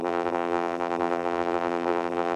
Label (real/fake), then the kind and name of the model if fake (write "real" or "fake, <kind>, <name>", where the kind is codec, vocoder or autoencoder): fake, vocoder, BigVGAN v2